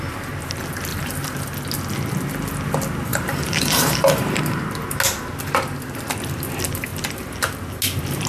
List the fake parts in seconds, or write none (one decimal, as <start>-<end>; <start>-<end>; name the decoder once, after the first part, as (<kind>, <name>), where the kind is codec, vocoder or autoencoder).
0.9-1.4 (vocoder, BigVGAN v2); 3.1-4.6